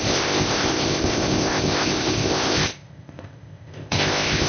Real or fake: fake